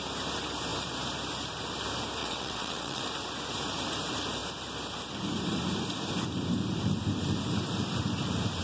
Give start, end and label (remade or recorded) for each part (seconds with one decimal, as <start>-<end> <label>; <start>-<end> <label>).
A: 0.0-2.2 recorded; 2.2-3.0 remade; 3.0-8.6 recorded